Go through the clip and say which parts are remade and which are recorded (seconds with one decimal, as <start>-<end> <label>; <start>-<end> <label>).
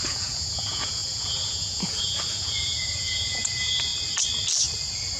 0.0-3.9 remade; 3.9-5.2 recorded